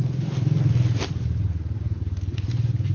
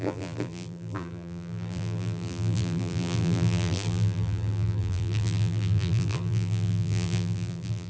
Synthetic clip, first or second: second